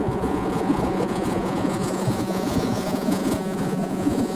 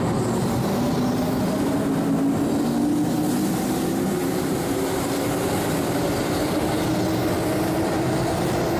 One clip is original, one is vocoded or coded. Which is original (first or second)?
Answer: second